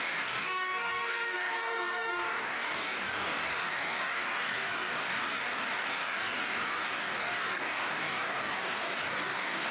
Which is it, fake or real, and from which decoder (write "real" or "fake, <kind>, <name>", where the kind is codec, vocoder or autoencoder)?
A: fake, codec, DAC